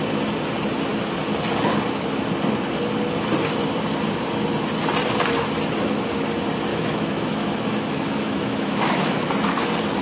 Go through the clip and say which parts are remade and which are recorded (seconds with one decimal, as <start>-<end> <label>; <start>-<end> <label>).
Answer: 0.0-6.7 recorded; 6.7-9.3 remade; 9.3-10.0 recorded